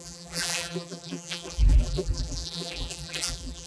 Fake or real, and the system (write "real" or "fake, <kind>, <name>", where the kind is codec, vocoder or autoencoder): fake, vocoder, BigVGAN v2